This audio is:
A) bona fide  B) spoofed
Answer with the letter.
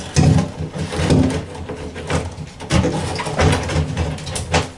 A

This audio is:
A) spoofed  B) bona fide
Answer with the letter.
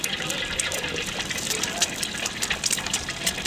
B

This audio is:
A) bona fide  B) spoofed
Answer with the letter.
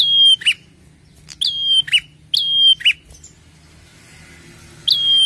A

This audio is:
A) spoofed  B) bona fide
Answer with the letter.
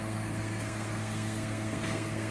A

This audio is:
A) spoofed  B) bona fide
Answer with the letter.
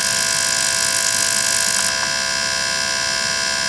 B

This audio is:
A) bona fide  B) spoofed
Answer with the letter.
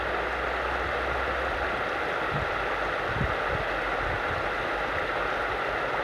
A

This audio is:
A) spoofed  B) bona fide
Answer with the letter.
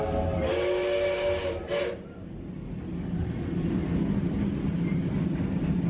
B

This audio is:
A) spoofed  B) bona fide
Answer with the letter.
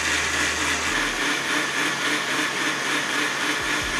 B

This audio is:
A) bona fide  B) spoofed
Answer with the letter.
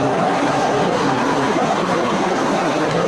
B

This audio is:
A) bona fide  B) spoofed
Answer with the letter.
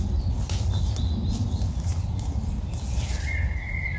A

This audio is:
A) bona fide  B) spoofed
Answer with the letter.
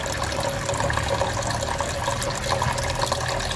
A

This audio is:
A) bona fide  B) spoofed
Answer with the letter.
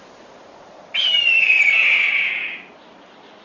A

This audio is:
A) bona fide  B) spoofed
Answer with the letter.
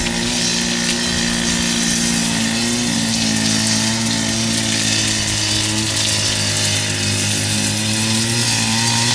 A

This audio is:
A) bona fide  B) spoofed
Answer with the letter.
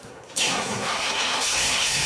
B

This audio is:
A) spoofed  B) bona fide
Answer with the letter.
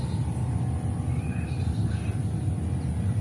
B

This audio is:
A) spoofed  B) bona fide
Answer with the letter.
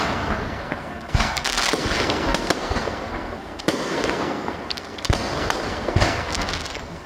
A